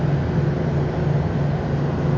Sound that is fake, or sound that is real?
real